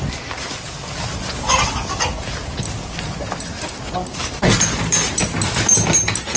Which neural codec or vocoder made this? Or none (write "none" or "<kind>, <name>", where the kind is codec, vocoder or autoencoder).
none